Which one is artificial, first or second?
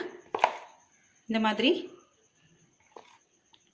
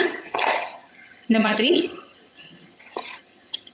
second